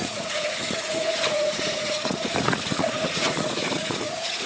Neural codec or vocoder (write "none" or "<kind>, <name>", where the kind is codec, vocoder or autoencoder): vocoder, Vocos